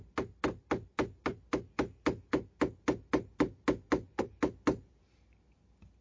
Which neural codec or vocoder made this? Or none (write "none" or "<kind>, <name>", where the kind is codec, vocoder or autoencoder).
none